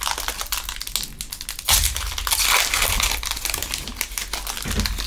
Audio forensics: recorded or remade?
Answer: recorded